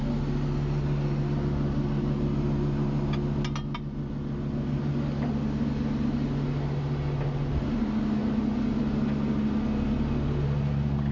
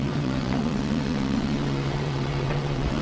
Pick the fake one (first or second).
second